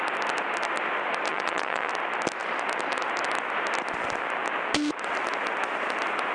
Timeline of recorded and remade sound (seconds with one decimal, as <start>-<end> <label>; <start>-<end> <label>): 0.0-1.3 recorded; 1.3-1.9 remade; 1.9-6.3 recorded